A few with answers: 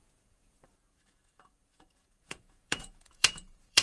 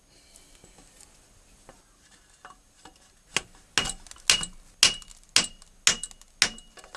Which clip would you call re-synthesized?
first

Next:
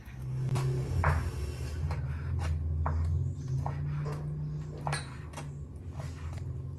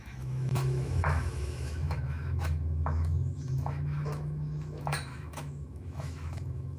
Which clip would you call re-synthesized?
second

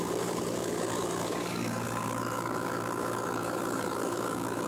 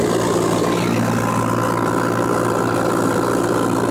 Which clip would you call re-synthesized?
first